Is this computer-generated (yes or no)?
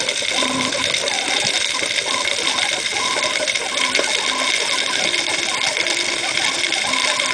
no